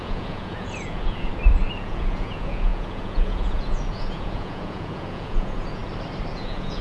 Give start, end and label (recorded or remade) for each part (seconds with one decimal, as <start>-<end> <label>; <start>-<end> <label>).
0.0-1.3 remade; 1.3-1.8 recorded; 1.8-5.8 remade; 5.8-6.3 recorded; 6.3-6.8 remade